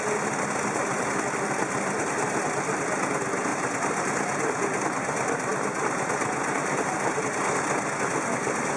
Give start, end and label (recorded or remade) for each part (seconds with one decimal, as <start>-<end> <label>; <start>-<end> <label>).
0.0-8.8 recorded